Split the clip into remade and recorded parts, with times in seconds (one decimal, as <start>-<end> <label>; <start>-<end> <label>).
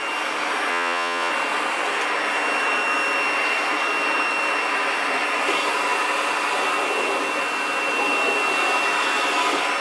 0.0-0.7 recorded; 0.7-1.3 remade; 1.3-9.8 recorded